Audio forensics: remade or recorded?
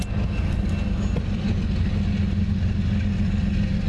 recorded